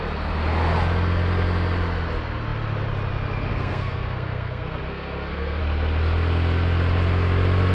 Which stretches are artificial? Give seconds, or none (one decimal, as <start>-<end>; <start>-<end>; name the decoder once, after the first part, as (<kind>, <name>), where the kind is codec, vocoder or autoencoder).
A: 3.5-5.6 (codec, SNAC)